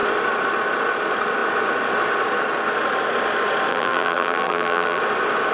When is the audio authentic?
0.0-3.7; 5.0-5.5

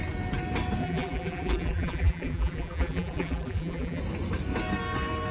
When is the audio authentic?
0.0-0.8; 4.0-5.3

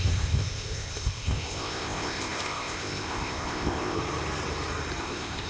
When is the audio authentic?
4.0-5.0

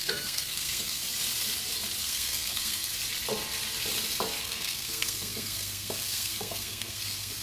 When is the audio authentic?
1.0-2.0; 2.9-4.4

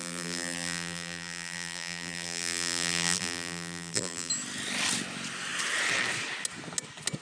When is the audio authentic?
4.3-7.2